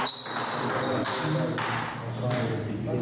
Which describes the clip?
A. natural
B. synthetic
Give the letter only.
A